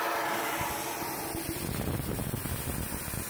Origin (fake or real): real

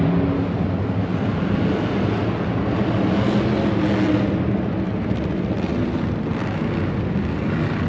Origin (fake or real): real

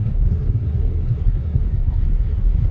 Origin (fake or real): fake